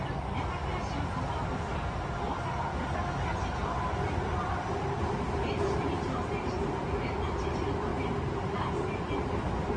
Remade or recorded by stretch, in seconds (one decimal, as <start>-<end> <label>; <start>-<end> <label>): 0.0-7.9 recorded; 7.9-8.9 remade; 8.9-9.8 recorded